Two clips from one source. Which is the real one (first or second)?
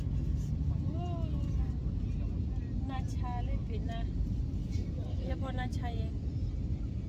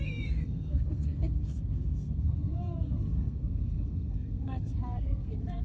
first